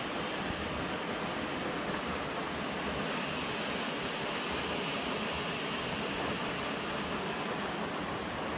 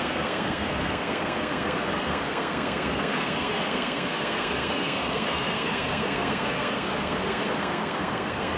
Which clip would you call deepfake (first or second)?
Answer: second